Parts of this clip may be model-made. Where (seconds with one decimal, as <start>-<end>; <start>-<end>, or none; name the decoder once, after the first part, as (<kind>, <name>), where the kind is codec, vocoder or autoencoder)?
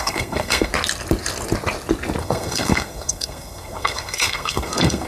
0.0-0.7 (codec, SNAC); 2.2-5.1